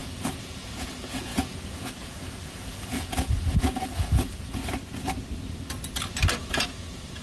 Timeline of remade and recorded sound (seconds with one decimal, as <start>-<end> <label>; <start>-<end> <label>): 0.0-4.6 remade; 4.6-6.4 recorded; 6.4-7.2 remade